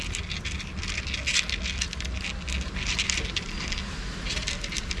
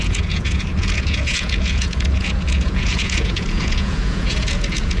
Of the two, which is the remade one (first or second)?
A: second